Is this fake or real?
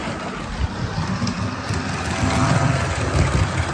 real